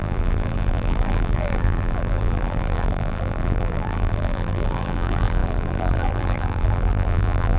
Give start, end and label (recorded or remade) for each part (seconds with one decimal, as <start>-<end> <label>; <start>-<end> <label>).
0.0-7.6 remade